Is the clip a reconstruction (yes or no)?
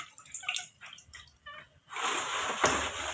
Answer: no